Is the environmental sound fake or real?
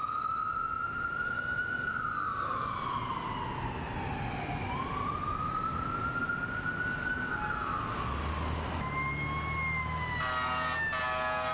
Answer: real